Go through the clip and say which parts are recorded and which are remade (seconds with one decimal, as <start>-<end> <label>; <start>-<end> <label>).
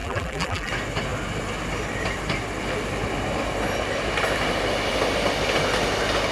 0.0-0.7 remade; 0.7-6.3 recorded